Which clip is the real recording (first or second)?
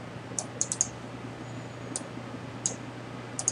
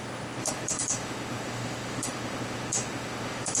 first